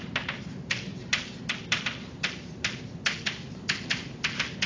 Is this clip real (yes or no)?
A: yes